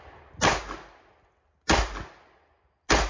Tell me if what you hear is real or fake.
real